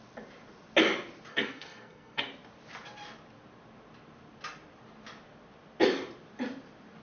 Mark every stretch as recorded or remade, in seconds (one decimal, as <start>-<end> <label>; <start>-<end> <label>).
0.0-1.3 recorded; 1.3-2.2 remade; 2.2-7.0 recorded